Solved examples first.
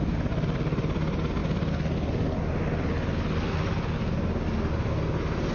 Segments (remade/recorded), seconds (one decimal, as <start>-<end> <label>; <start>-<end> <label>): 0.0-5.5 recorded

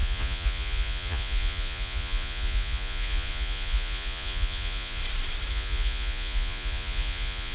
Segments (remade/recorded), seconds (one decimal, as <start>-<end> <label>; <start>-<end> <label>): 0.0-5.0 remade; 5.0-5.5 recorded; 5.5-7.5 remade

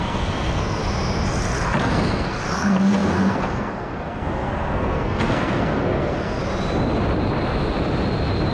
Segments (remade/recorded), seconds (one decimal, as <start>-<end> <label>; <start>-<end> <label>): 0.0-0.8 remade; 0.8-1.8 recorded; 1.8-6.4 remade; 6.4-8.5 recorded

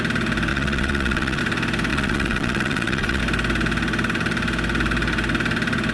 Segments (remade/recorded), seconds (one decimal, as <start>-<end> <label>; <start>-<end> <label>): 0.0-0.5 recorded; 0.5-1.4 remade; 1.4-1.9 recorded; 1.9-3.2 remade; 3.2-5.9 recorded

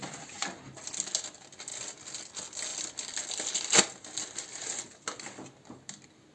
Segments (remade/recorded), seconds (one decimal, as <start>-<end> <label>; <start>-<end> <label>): 0.0-6.3 recorded

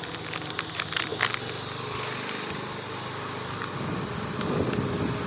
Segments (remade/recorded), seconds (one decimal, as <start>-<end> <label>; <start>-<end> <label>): 0.0-5.3 recorded